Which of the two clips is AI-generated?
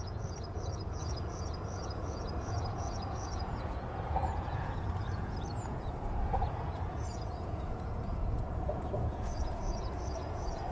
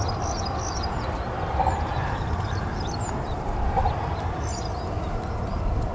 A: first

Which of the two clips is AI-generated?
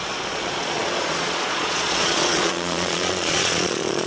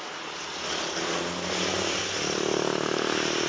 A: first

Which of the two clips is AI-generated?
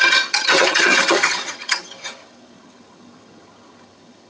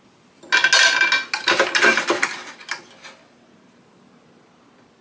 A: first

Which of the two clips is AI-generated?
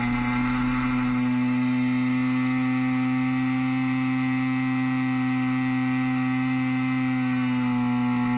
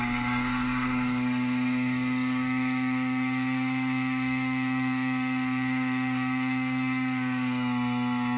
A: second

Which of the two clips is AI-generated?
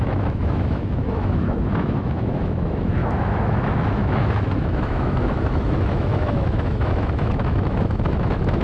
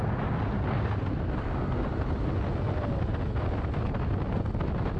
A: first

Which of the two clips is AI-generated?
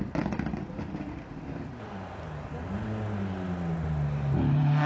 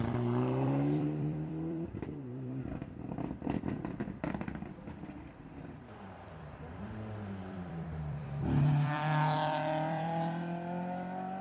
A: second